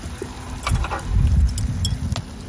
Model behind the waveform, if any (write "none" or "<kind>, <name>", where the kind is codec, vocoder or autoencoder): none